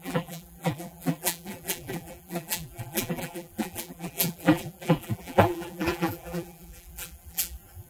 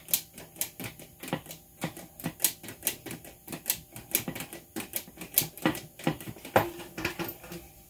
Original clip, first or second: second